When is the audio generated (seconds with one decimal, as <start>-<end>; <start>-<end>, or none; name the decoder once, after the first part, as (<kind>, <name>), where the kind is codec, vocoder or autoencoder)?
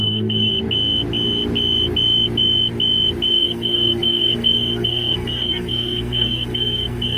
0.0-0.5 (codec, SNAC); 3.3-7.2